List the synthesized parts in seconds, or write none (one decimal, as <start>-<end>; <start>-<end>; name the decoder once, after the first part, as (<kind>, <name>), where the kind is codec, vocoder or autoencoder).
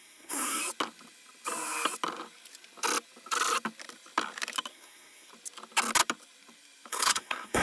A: 0.0-0.6 (codec, SNAC); 4.7-5.3; 6.9-7.6